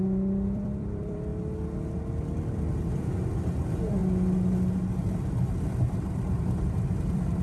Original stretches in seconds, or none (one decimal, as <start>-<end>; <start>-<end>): 1.3-2.9; 4.0-5.6